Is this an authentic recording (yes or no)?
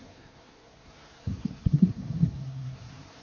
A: no